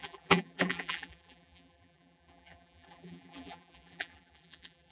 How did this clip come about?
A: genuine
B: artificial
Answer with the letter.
B